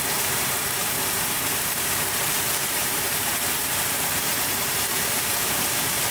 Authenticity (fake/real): fake